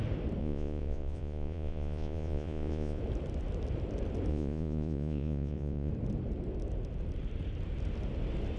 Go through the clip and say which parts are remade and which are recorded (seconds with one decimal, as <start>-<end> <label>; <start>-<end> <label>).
0.0-0.4 recorded; 0.4-3.0 remade; 3.0-4.3 recorded; 4.3-5.9 remade; 5.9-8.6 recorded